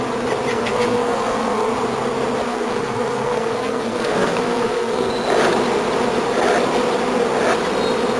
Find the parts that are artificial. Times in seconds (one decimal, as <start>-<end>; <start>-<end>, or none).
0.5-1.7; 2.5-5.1